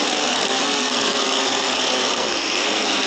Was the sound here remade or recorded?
remade